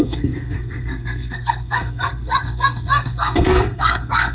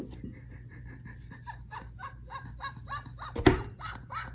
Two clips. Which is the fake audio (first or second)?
first